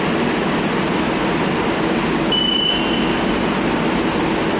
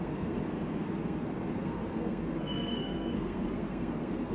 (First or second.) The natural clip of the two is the first